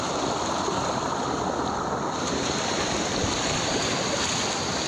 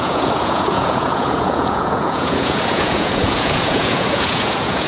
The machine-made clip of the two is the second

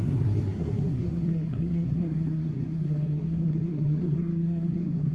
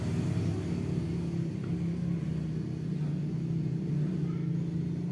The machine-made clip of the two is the first